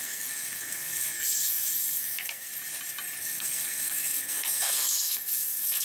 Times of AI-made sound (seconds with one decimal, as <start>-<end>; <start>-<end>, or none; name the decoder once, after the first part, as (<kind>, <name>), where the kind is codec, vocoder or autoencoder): 0.0-2.5 (codec, SNAC); 3.2-5.8